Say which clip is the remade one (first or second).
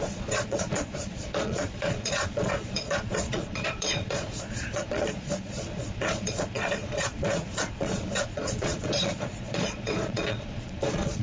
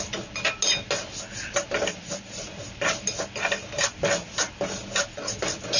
first